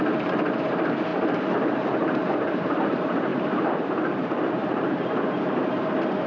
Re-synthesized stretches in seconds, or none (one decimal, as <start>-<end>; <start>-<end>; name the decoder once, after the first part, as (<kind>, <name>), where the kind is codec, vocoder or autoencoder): 0.0-6.3 (vocoder, BigVGAN v2)